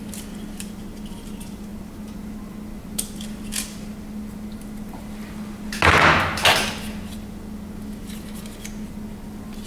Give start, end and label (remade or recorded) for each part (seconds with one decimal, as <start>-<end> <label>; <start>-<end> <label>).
0.0-9.7 recorded